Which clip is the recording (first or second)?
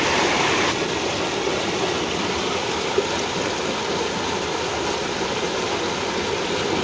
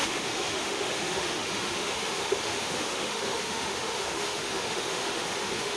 first